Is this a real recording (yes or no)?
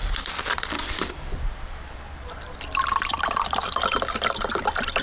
no